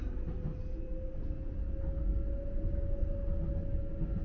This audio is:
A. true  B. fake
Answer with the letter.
A